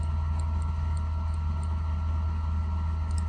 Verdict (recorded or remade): recorded